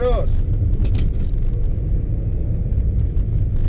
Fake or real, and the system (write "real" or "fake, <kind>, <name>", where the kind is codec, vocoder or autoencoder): real